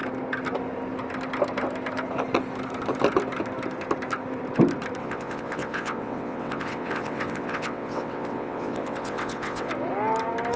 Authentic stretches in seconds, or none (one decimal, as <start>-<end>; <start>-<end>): 0.0-5.0; 9.7-10.6